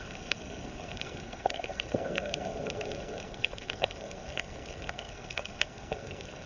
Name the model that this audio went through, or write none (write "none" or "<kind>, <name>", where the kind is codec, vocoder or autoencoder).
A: codec, SNAC